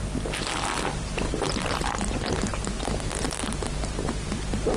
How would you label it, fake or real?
real